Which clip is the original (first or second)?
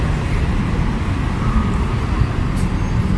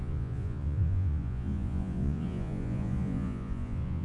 first